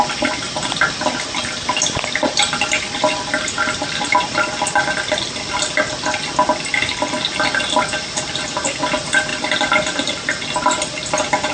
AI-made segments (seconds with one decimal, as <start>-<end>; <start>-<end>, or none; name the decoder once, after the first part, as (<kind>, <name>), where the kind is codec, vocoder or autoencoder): none